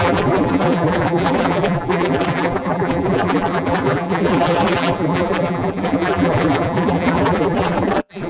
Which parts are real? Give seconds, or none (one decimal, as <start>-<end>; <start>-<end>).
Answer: none